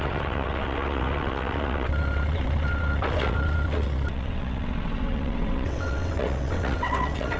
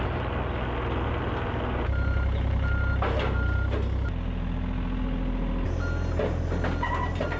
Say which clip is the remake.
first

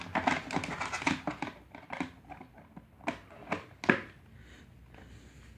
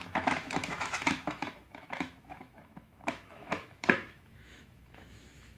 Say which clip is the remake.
second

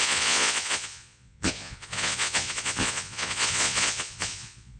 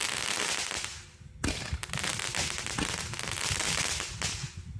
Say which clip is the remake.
first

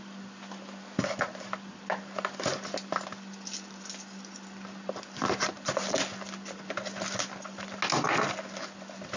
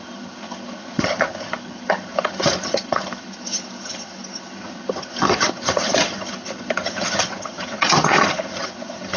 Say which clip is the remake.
second